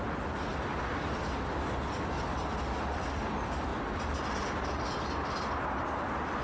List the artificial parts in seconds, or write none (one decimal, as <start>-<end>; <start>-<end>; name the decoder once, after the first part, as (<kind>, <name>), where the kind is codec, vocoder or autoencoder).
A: none